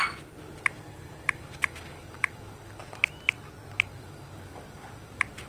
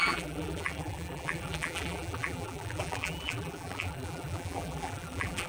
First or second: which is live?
first